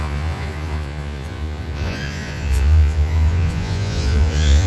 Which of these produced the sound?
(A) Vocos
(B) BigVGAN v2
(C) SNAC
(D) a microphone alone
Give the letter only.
A